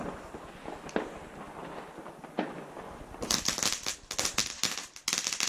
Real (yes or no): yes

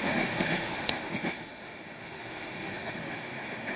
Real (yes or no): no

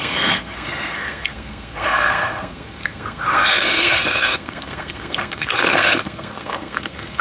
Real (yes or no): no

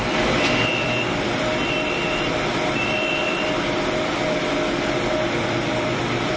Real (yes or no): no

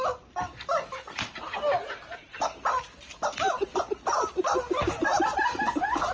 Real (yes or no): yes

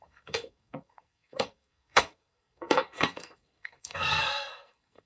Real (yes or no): no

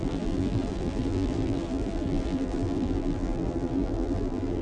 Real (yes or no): no